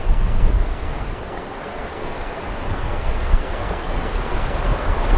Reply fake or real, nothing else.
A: fake